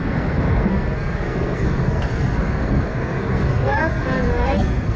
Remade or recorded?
remade